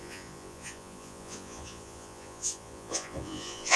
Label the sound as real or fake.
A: fake